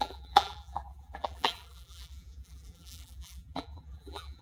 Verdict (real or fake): fake